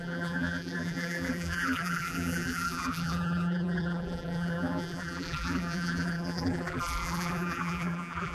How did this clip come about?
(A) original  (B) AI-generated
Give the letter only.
B